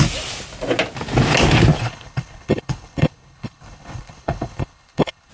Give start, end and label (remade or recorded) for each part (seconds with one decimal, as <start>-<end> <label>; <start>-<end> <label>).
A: 0.0-1.8 recorded; 1.8-5.3 remade